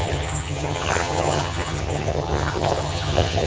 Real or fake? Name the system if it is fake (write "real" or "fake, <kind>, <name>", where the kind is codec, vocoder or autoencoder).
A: fake, vocoder, HiFi-GAN